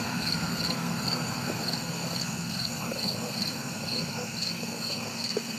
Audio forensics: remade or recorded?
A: remade